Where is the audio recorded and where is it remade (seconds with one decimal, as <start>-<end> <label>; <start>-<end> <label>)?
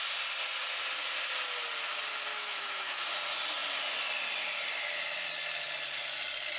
0.0-2.3 recorded; 2.3-3.0 remade; 3.0-6.6 recorded